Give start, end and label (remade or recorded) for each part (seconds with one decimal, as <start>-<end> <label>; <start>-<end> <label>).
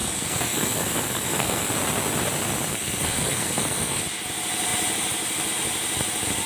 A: 0.0-1.7 remade; 1.7-2.7 recorded; 2.7-4.0 remade; 4.0-6.5 recorded